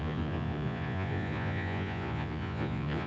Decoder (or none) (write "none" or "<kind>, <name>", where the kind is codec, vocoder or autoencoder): vocoder, Vocos